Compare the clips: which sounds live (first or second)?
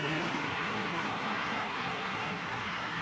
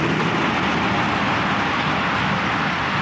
second